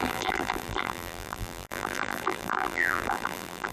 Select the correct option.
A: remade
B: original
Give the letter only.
A